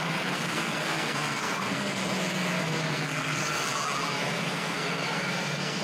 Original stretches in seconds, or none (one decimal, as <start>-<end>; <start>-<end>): 2.0-2.6; 3.7-4.4